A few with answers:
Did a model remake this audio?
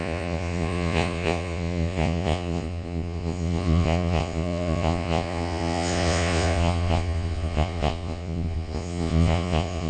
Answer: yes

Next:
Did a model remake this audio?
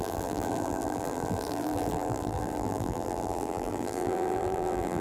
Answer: yes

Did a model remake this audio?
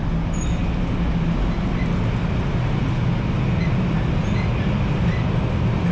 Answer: no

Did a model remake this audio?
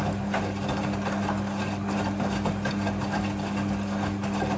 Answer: no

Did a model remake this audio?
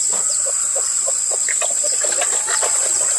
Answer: no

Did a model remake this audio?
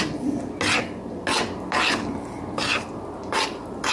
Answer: no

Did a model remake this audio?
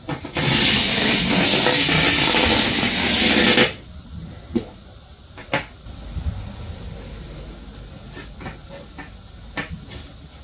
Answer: no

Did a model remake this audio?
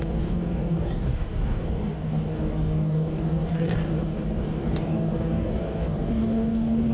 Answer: yes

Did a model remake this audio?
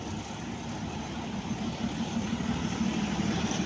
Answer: no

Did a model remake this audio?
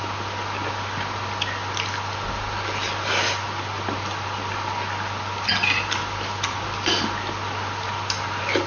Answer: no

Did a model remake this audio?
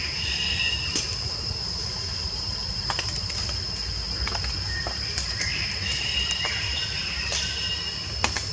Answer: yes